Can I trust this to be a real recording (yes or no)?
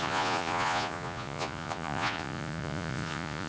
no